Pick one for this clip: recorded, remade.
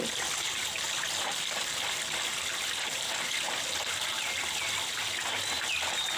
recorded